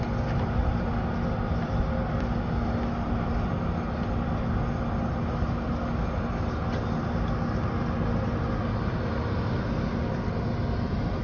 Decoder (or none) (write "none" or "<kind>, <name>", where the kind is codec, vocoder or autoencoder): none